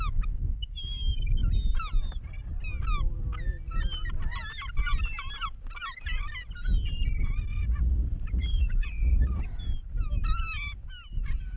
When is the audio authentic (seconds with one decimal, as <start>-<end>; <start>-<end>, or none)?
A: 0.0-7.5; 9.4-11.6